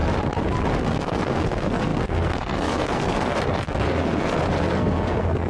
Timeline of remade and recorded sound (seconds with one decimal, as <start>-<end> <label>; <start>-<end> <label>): 0.0-0.7 recorded; 0.7-5.5 remade